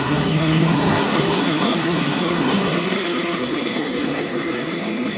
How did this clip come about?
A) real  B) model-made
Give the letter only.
B